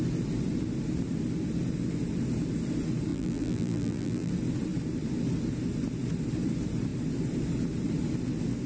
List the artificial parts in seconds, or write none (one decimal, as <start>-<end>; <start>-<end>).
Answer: 3.1-4.3